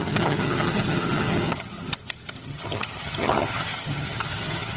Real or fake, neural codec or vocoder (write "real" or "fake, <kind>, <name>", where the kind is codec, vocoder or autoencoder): fake, vocoder, HiFi-GAN